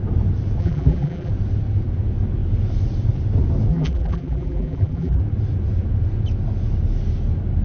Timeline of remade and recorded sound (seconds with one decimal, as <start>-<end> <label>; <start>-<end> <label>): 0.0-0.6 recorded; 0.6-1.3 remade; 1.3-3.7 recorded; 3.7-5.2 remade; 5.2-7.6 recorded